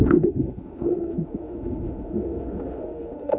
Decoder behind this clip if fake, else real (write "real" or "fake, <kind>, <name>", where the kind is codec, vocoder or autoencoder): fake, autoencoder, DAC-VAE